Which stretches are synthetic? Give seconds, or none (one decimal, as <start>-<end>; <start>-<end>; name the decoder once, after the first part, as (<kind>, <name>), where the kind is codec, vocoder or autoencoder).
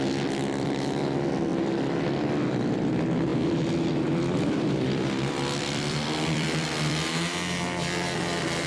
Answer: 3.3-8.2 (vocoder, BigVGAN v2)